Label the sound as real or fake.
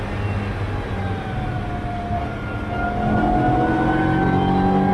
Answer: real